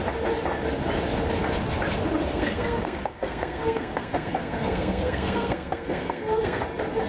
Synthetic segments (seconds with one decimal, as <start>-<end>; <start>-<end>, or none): 2.3-6.6